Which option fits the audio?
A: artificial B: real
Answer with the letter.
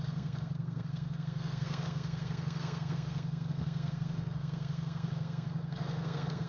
A